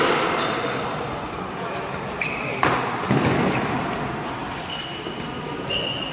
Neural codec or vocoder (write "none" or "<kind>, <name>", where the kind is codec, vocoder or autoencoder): none